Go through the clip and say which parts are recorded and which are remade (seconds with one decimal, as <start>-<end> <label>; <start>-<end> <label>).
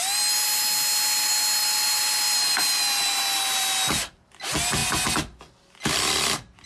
0.0-1.6 recorded; 1.6-2.8 remade; 2.8-6.7 recorded